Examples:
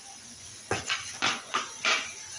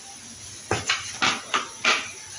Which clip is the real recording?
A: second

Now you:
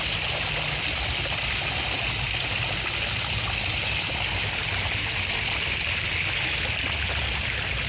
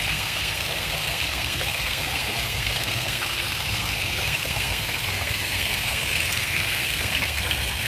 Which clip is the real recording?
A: first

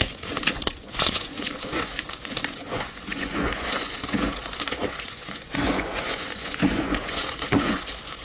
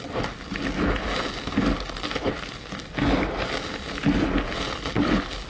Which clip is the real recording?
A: second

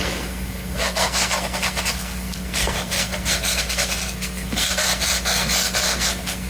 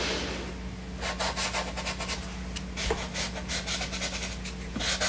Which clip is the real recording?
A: second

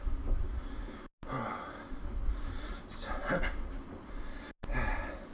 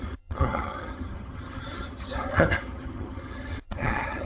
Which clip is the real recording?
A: first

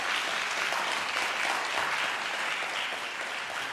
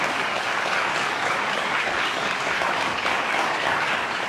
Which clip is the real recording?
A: first